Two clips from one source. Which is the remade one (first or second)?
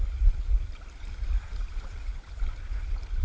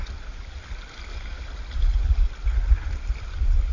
first